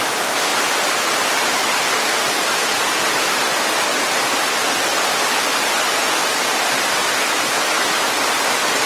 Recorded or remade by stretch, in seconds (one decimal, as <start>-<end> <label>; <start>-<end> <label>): 0.0-0.5 recorded; 0.5-4.2 remade; 4.2-4.9 recorded; 4.9-5.4 remade; 5.4-6.2 recorded; 6.2-7.5 remade; 7.5-8.9 recorded